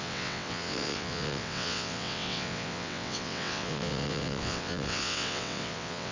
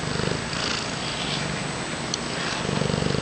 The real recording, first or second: second